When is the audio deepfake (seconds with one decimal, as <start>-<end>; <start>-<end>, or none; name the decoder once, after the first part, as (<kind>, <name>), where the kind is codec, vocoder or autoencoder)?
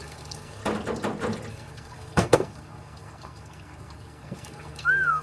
0.0-0.6 (codec, SNAC); 1.5-5.2